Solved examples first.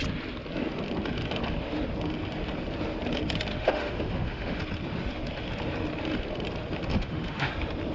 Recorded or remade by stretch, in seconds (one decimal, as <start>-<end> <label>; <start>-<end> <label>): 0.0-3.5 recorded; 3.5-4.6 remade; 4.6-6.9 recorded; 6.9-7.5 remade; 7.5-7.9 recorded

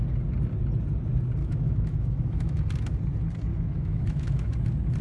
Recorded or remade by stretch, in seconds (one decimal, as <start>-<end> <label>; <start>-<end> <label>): 0.0-1.4 recorded; 1.4-2.6 remade; 2.6-3.5 recorded; 3.5-4.5 remade; 4.5-5.0 recorded

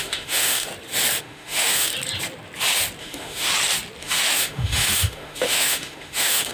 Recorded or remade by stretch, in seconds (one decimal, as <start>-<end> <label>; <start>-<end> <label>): 0.0-0.7 remade; 0.7-1.2 recorded; 1.2-1.9 remade; 1.9-3.0 recorded; 3.0-3.5 remade; 3.5-4.0 recorded; 4.0-6.5 remade